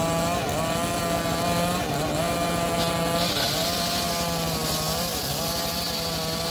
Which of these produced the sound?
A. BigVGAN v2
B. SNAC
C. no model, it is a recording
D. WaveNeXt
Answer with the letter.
C